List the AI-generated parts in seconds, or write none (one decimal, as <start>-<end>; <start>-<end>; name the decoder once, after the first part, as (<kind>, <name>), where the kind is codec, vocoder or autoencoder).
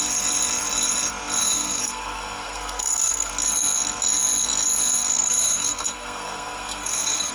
1.4-3.3 (codec, SNAC); 5.1-7.3